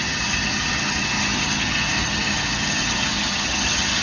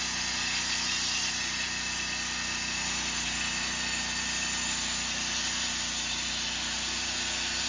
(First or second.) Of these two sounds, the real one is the second